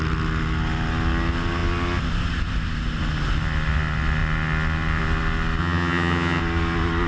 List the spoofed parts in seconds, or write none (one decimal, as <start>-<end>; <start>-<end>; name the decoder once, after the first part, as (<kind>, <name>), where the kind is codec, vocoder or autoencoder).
5.6-6.4 (vocoder, HiFi-GAN)